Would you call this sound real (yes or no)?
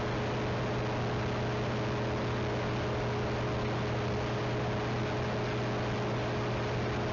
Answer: yes